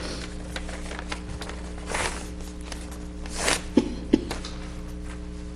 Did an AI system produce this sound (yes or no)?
no